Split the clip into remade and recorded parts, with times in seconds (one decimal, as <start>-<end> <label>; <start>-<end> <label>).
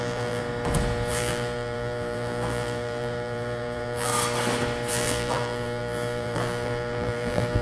0.0-0.4 remade; 0.4-1.1 recorded; 1.1-4.1 remade; 4.1-4.9 recorded; 4.9-7.6 remade